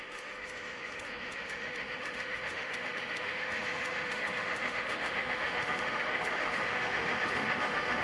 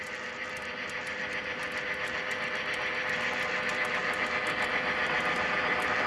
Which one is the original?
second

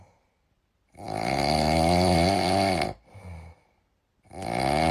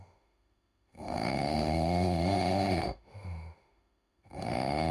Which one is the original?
first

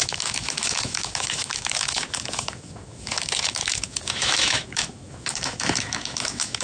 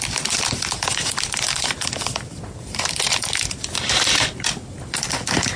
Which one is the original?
second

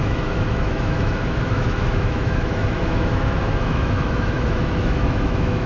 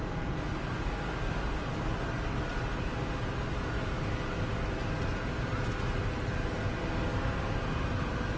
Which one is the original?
second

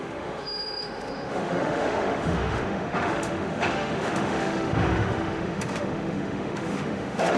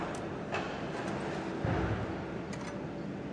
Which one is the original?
second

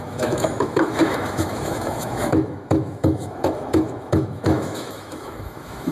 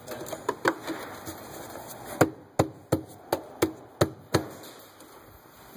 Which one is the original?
second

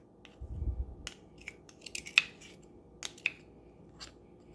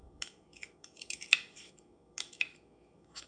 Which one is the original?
first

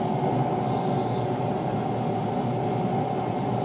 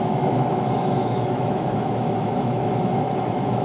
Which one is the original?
first